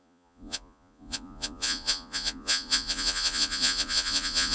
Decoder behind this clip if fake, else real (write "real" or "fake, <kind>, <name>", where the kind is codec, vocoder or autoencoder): fake, vocoder, Vocos